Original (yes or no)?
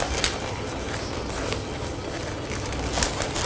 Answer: yes